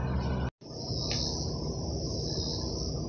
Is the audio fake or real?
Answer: real